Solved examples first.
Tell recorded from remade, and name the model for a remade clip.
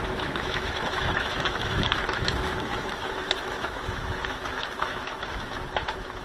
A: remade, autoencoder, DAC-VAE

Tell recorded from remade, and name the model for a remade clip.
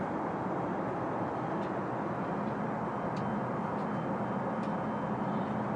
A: recorded